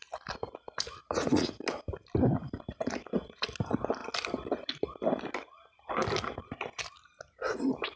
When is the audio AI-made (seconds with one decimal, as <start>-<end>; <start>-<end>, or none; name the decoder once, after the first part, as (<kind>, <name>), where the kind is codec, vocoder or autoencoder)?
1.0-1.6 (vocoder, Vocos)